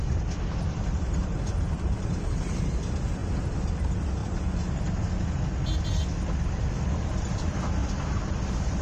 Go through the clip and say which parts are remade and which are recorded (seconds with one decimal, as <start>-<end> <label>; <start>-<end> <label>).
0.0-1.2 recorded; 1.2-2.6 remade; 2.6-4.2 recorded; 4.2-5.1 remade; 5.1-8.8 recorded